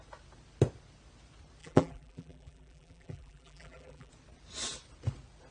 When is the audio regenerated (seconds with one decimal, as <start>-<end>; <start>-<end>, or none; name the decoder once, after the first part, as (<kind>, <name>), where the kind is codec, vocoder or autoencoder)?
1.6-4.1 (vocoder, BigVGAN v2)